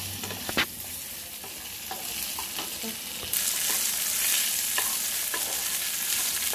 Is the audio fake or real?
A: real